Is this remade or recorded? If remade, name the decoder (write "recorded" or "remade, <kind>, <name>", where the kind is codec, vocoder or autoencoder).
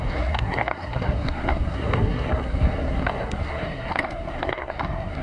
remade, codec, SNAC